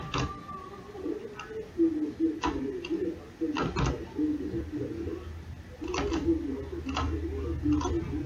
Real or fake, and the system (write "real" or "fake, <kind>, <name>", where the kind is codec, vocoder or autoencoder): real